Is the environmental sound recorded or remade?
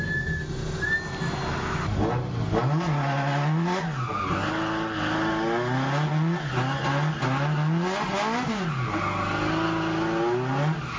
recorded